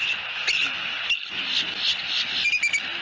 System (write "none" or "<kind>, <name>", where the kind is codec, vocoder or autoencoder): none